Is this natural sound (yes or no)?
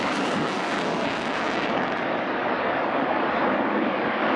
no